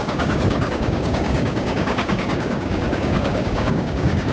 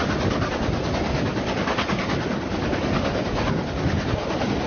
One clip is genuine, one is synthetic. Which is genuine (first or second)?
second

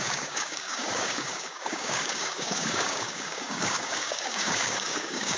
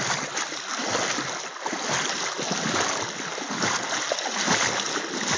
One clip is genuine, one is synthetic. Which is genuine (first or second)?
second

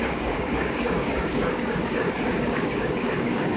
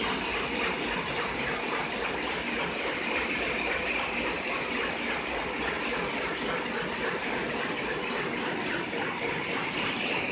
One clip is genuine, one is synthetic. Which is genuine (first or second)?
second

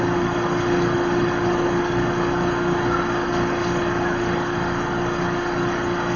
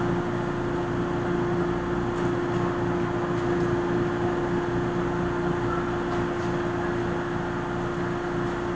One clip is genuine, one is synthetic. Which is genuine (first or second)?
second